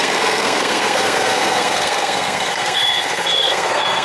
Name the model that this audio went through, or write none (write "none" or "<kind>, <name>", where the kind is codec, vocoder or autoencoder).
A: codec, SNAC